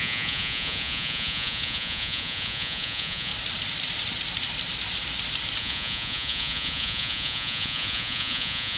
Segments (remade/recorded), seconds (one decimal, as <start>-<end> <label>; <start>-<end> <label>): 0.0-3.3 remade; 3.3-5.6 recorded; 5.6-8.8 remade